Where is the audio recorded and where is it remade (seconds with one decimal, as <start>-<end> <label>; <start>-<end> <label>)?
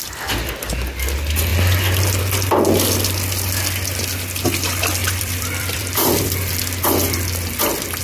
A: 0.0-5.0 recorded; 5.0-6.6 remade; 6.6-8.0 recorded